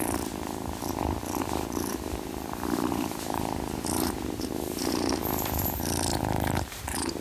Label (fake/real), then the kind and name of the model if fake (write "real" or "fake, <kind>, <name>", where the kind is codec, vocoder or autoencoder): fake, vocoder, BigVGAN v2